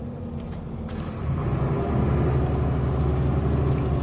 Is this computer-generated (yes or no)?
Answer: no